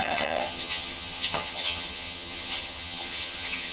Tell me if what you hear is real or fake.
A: fake